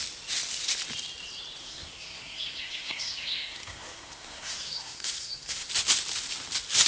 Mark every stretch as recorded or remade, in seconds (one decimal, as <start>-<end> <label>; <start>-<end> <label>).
0.0-1.6 recorded; 1.6-5.7 remade; 5.7-6.9 recorded